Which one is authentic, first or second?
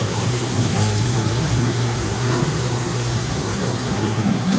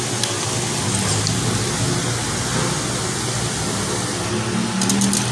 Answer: second